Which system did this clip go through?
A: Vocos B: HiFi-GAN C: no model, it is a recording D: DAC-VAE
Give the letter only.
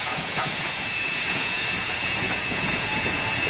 A